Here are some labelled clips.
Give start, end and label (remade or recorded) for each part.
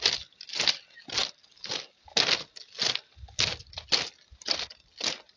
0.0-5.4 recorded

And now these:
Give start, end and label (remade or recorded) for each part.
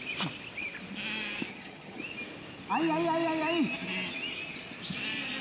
0.0-1.5 recorded; 1.5-2.0 remade; 2.0-5.4 recorded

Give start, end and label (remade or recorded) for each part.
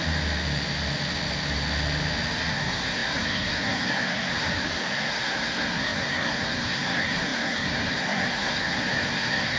0.0-2.5 recorded; 2.5-9.6 remade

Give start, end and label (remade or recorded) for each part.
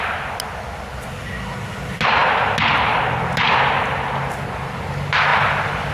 0.0-5.9 recorded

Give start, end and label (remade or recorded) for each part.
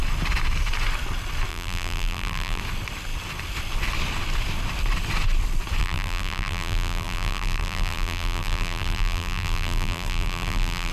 0.0-1.5 recorded; 1.5-2.6 remade; 2.6-5.8 recorded; 5.8-10.9 remade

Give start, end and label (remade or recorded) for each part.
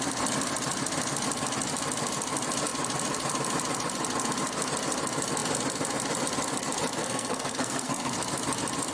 0.0-7.0 recorded; 7.0-8.1 remade; 8.1-8.9 recorded